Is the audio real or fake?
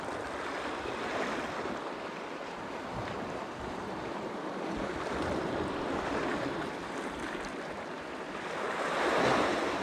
real